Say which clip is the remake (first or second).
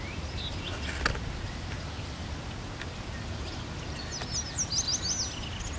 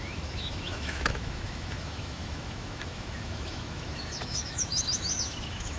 second